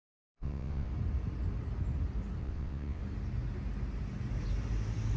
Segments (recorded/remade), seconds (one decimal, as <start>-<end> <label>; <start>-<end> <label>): 0.0-0.9 remade; 0.9-2.4 recorded; 2.4-3.0 remade; 3.0-5.2 recorded